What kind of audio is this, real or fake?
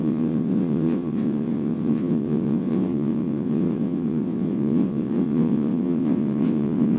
fake